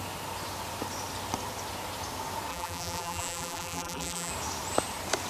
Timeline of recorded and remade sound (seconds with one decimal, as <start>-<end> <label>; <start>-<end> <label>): 0.0-2.5 recorded; 2.5-4.3 remade; 4.3-5.3 recorded